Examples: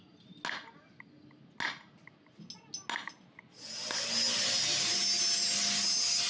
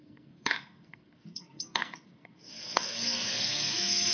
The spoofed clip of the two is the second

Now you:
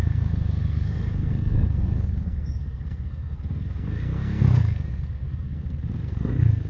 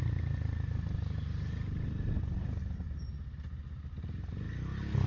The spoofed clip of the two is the first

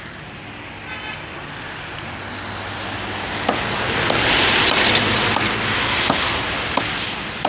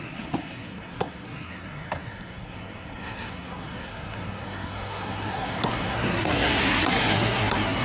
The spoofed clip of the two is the second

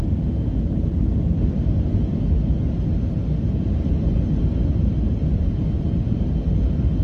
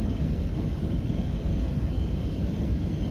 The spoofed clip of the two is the second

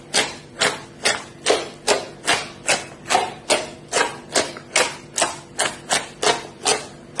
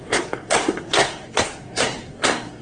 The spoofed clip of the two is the second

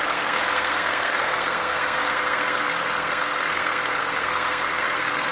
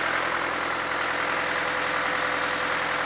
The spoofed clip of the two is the first